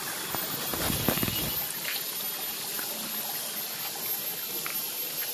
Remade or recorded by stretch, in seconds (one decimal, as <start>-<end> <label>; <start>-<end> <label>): 0.0-5.3 recorded